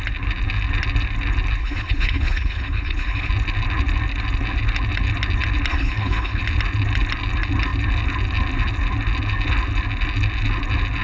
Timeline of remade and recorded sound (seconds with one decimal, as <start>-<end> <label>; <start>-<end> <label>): 0.0-1.6 recorded; 1.6-3.3 remade; 3.3-5.7 recorded; 5.7-6.4 remade; 6.4-11.0 recorded